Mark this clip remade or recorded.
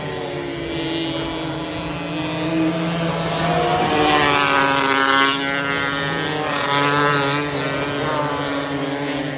recorded